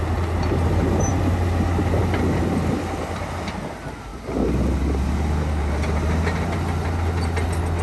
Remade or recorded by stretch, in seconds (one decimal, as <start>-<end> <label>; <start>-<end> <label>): 0.0-7.8 recorded